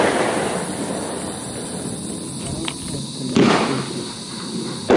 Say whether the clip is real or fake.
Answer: real